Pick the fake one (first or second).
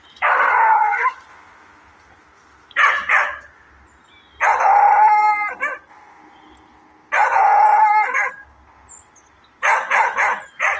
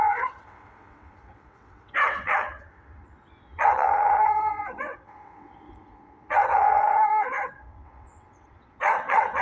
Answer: second